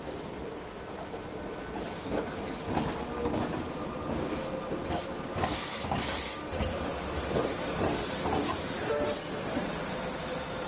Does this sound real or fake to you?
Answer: real